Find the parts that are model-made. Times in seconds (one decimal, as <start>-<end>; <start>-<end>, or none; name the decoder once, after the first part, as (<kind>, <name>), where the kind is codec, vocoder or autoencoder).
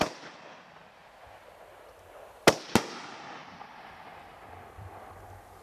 none